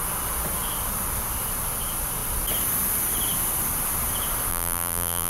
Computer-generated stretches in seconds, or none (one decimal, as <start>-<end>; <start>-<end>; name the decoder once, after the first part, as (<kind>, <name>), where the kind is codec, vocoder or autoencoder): 4.5-5.3 (vocoder, BigVGAN v2)